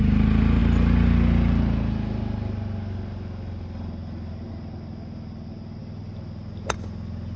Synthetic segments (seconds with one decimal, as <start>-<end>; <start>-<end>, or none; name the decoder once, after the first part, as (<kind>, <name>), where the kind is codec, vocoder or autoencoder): none